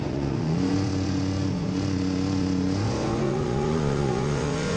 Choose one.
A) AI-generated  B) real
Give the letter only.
A